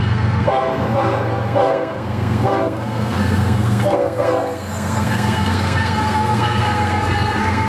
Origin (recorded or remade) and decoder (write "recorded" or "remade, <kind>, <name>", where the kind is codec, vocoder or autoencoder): remade, codec, SNAC